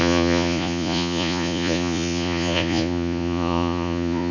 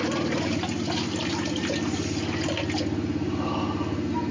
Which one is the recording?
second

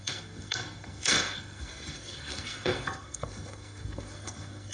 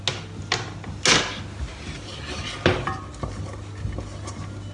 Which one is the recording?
second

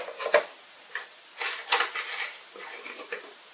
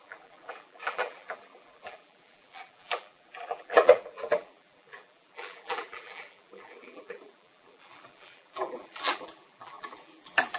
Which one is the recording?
first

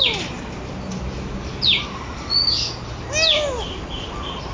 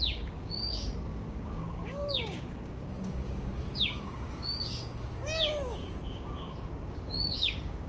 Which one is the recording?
first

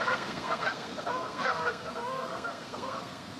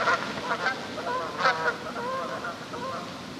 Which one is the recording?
second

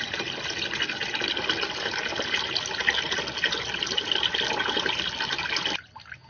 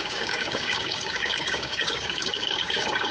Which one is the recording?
first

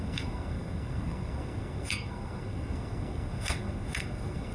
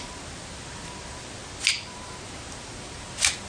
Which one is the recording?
second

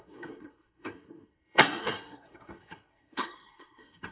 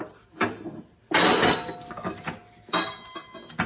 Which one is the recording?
second